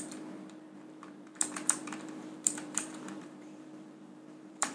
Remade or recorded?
remade